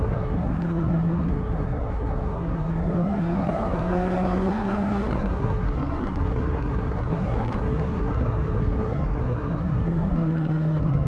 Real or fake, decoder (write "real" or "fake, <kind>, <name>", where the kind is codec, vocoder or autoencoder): fake, codec, SNAC